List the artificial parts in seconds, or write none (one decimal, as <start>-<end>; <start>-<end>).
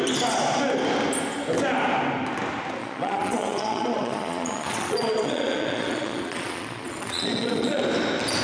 2.8-7.8